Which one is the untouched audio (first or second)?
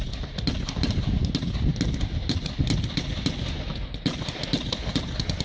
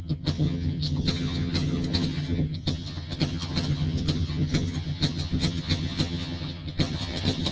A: first